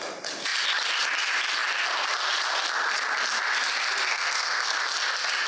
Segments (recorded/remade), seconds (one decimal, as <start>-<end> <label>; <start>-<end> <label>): 0.0-4.1 recorded; 4.1-4.8 remade; 4.8-5.5 recorded